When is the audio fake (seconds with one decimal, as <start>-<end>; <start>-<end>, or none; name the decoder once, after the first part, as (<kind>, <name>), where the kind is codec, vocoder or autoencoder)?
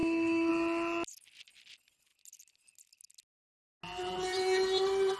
0.0-0.5 (codec, SNAC)